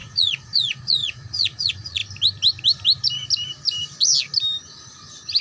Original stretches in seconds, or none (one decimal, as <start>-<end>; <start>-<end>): 2.0-5.4